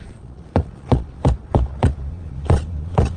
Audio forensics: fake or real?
fake